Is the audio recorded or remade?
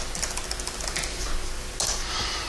recorded